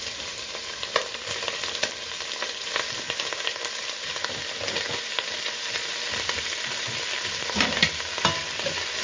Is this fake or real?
real